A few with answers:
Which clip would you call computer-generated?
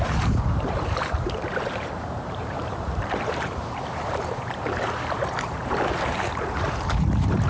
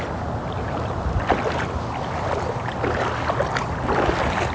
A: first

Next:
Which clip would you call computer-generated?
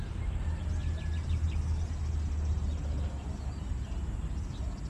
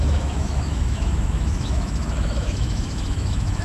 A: second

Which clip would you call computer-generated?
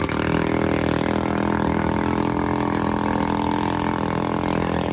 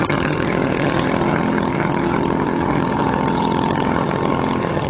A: second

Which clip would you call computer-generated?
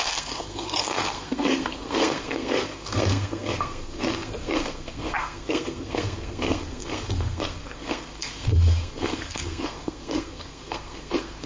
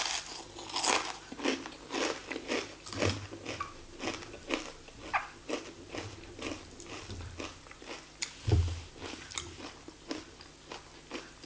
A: first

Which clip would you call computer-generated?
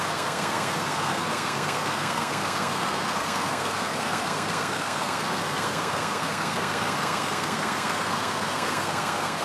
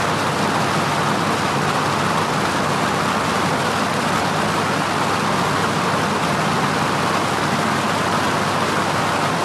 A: first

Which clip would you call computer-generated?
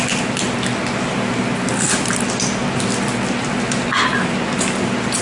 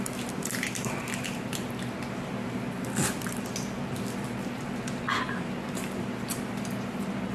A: second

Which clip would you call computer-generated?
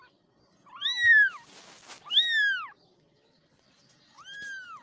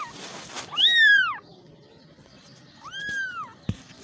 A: second